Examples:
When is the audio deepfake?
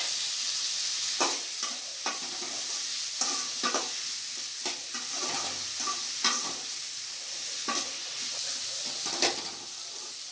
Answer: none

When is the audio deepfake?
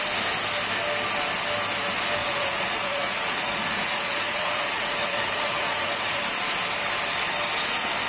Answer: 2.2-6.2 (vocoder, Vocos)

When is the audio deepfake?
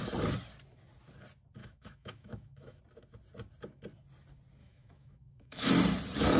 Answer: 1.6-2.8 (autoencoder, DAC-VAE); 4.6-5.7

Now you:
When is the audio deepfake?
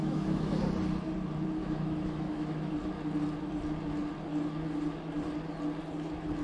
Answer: 0.0-0.6 (autoencoder, DAC-VAE); 1.6-2.7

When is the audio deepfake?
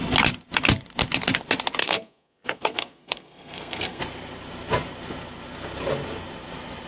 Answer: 1.8-4.0 (codec, SNAC)